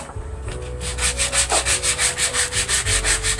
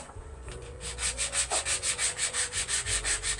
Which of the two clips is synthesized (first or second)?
second